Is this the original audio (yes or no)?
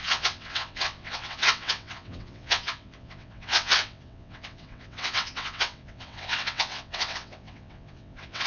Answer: no